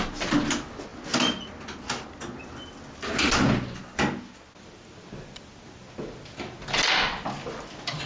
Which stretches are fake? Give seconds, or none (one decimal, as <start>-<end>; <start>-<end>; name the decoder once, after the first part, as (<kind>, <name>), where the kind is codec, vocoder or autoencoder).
none